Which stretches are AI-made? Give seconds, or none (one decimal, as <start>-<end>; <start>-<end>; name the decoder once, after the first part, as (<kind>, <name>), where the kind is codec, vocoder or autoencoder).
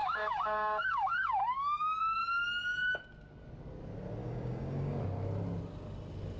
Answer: 0.0-2.0 (codec, DAC); 4.2-5.0